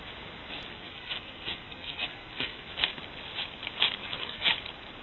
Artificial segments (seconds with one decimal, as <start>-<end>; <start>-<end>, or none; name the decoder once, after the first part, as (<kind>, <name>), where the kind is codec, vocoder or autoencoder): 0.7-2.7 (codec, SNAC); 4.0-4.5